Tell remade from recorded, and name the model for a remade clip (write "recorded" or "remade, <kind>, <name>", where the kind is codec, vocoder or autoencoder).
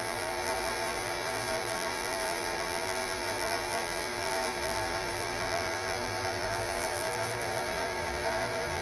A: remade, vocoder, BigVGAN v2